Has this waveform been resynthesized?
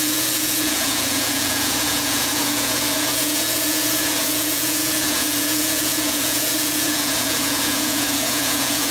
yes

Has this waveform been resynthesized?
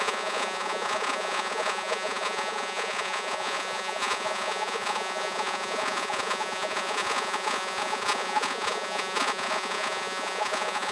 yes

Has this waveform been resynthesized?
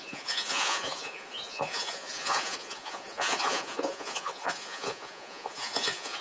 yes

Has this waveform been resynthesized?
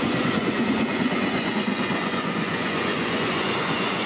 yes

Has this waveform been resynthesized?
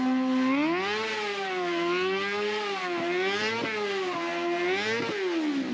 no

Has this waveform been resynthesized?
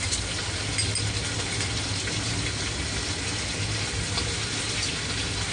no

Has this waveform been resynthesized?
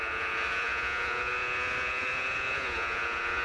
yes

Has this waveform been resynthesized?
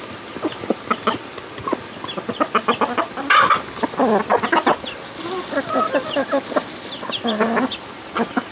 no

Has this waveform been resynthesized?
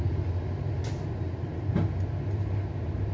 no